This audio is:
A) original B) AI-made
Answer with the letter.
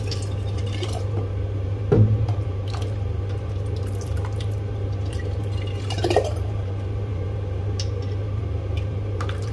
B